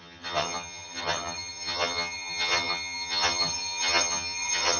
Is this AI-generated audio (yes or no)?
yes